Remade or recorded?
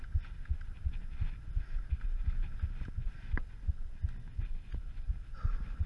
recorded